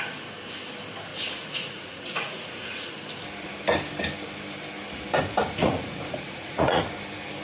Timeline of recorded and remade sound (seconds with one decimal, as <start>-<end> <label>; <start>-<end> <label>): 0.0-1.1 recorded; 1.1-2.9 remade; 2.9-5.6 recorded; 5.6-6.8 remade; 6.8-7.4 recorded

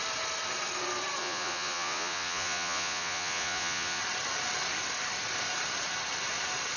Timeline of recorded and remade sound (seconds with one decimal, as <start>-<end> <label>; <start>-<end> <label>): 0.0-1.2 recorded; 1.2-4.0 remade; 4.0-6.8 recorded

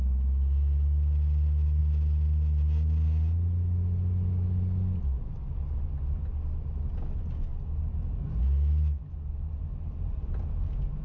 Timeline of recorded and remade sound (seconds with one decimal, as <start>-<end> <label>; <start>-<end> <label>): 0.0-11.0 recorded